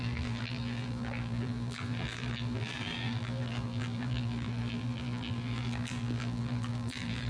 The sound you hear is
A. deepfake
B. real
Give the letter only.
A